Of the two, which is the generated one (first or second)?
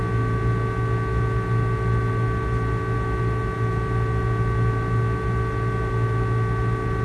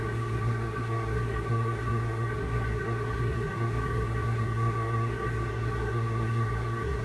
second